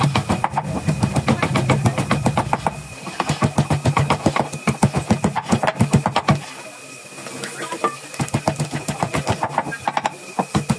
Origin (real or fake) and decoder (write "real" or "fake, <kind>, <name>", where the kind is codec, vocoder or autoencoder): real